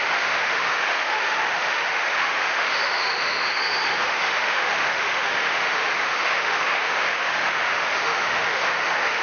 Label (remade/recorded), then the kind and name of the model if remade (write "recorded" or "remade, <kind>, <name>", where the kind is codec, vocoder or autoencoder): remade, autoencoder, DAC-VAE